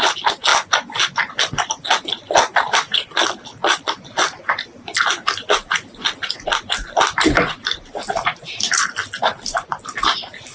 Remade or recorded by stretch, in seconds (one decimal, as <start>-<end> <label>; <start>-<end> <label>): 0.0-10.5 recorded